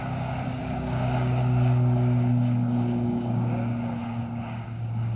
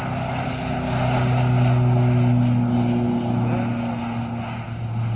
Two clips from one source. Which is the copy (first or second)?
first